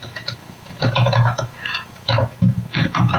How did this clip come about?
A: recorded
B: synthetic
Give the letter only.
B